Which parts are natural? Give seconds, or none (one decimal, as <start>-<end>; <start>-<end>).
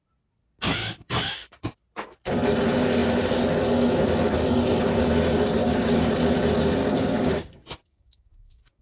0.0-0.8; 1.7-5.6; 6.1-6.8